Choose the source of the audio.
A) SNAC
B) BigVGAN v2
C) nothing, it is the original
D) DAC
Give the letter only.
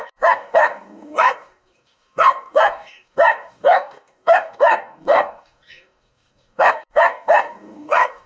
D